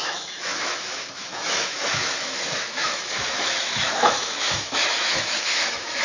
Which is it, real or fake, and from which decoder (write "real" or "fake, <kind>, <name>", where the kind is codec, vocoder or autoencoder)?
fake, autoencoder, DAC-VAE